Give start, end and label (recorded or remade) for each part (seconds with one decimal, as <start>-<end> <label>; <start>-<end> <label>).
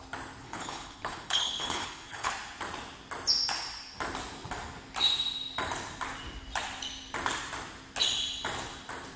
0.0-0.4 recorded; 0.4-2.3 remade; 2.3-9.2 recorded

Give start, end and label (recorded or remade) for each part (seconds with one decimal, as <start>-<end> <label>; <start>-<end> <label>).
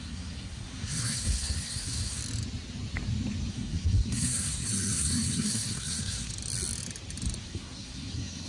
0.0-2.2 remade; 2.2-3.5 recorded; 3.5-6.3 remade; 6.3-7.4 recorded; 7.4-8.5 remade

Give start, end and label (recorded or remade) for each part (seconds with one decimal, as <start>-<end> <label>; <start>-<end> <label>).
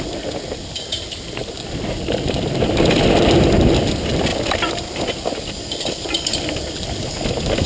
0.0-7.7 recorded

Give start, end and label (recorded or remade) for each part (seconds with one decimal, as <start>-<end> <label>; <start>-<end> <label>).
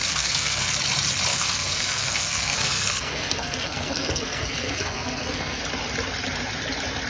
0.0-0.7 remade; 0.7-1.3 recorded; 1.3-5.6 remade; 5.6-7.1 recorded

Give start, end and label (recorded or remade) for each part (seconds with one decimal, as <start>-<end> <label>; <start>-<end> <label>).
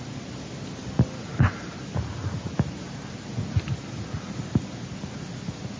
0.0-5.8 recorded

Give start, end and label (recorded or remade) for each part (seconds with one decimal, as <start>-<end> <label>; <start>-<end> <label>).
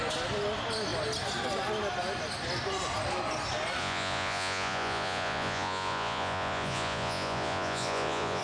0.0-3.8 recorded; 3.8-8.4 remade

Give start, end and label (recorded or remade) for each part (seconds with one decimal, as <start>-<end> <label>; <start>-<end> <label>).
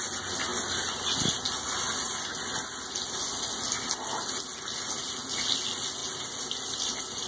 0.0-7.3 recorded